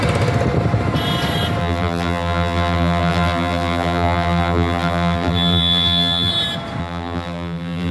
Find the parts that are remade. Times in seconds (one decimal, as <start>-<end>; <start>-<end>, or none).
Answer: 1.6-6.3; 6.8-7.9